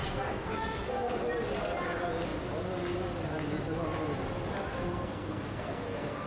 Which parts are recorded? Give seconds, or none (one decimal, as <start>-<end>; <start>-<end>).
1.1-4.7